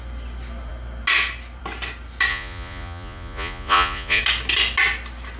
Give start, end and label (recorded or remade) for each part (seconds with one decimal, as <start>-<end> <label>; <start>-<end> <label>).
0.0-2.3 recorded; 2.3-4.2 remade; 4.2-5.4 recorded